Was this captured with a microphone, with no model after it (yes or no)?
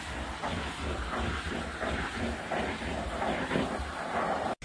yes